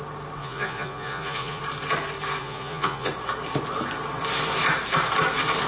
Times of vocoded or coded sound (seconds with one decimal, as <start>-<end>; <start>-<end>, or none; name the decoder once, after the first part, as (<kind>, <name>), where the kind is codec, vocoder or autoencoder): 0.4-1.6 (vocoder, Vocos); 2.4-3.1